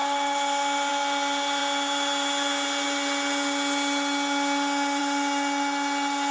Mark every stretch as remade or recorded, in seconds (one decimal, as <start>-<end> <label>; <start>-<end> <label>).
0.0-6.3 recorded